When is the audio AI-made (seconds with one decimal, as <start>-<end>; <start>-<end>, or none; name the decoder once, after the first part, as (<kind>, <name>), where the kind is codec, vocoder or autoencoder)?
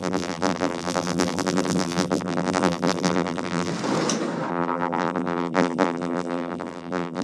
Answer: 0.0-3.7 (vocoder, BigVGAN v2); 4.5-7.2